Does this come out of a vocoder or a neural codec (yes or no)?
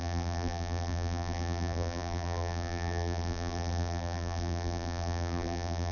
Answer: yes